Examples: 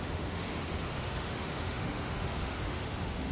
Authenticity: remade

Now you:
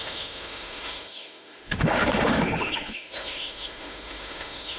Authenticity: remade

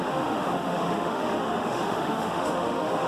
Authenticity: remade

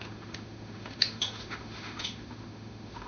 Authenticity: remade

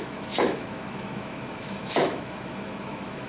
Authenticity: remade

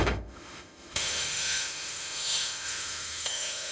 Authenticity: remade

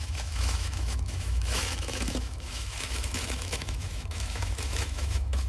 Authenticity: remade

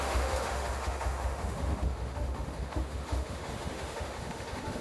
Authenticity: remade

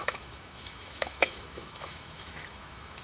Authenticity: remade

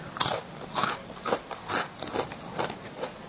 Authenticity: recorded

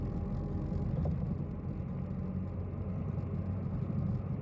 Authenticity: recorded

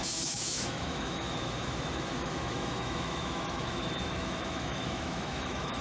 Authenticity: remade